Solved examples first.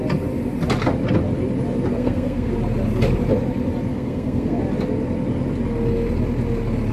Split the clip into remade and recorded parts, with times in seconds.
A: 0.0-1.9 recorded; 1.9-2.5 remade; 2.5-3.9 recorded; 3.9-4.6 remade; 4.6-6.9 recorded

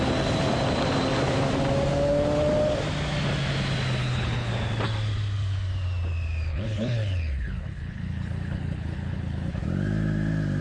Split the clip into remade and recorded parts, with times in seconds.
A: 0.0-4.0 recorded; 4.0-4.5 remade; 4.5-6.5 recorded; 6.5-9.6 remade; 9.6-10.6 recorded

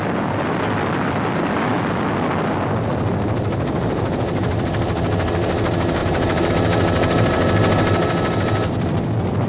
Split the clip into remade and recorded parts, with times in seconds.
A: 0.0-6.0 recorded; 6.0-6.5 remade; 6.5-9.5 recorded